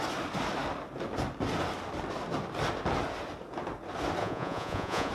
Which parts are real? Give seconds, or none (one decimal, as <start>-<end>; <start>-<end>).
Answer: 0.0-4.2